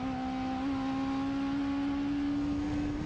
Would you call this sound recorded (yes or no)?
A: yes